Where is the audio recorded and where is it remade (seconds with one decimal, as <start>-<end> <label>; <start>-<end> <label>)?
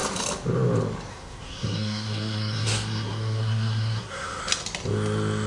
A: 0.0-1.1 recorded; 1.1-4.4 remade; 4.4-5.5 recorded